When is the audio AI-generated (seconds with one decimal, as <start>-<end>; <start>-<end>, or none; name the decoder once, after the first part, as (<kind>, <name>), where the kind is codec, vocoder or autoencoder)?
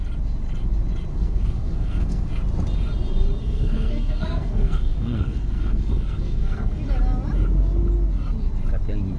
1.1-2.3 (codec, SNAC); 3.4-6.8